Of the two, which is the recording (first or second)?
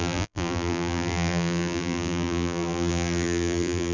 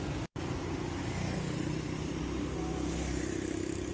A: second